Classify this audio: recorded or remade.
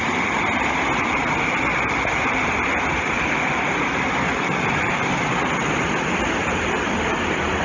recorded